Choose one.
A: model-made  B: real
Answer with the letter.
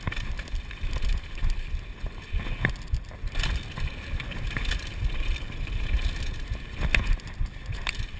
B